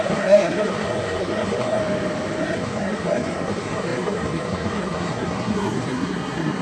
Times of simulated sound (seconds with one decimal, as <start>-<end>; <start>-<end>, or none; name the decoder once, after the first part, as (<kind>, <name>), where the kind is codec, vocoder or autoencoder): 0.0-1.8 (codec, SNAC); 2.4-6.6